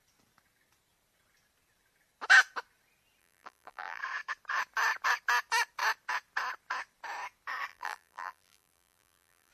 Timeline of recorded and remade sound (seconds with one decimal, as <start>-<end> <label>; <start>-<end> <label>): 0.0-3.2 recorded; 3.2-4.0 remade; 4.0-7.7 recorded; 7.7-9.5 remade